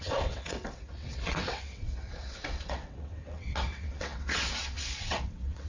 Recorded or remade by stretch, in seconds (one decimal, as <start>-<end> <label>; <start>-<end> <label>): 0.0-5.7 remade